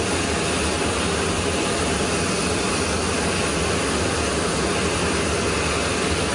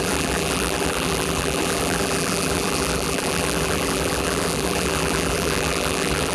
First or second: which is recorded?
first